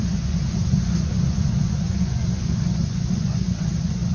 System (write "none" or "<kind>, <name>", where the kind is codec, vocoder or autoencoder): vocoder, Vocos